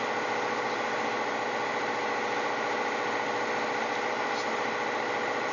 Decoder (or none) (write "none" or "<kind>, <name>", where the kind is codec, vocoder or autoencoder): none